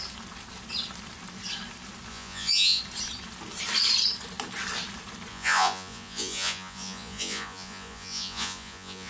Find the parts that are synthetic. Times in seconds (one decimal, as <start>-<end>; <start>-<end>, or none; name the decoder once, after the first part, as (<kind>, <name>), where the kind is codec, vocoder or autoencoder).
2.1-2.8 (vocoder, Vocos); 5.3-9.1